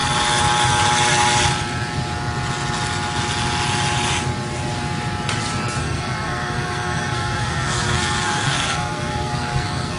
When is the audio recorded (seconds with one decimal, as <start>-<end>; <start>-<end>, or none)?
0.0-5.8